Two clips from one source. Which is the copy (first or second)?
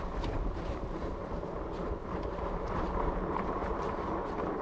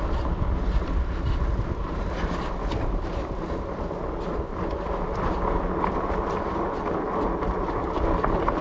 first